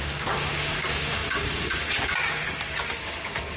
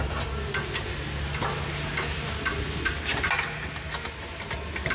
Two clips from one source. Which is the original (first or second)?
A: second